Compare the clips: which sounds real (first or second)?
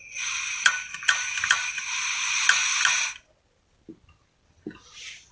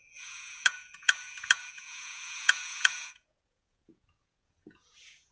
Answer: first